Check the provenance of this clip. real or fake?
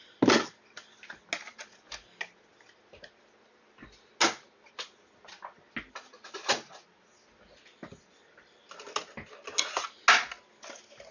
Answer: real